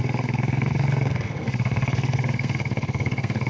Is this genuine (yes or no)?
no